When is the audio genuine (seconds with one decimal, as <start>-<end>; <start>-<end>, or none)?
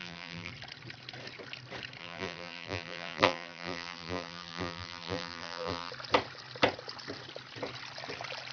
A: 0.5-2.0; 5.9-8.5